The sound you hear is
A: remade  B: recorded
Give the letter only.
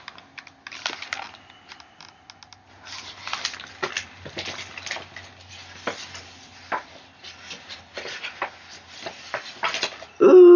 B